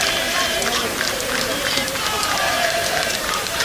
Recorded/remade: remade